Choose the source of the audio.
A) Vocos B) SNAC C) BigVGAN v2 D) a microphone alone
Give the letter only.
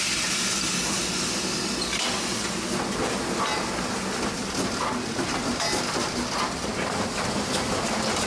D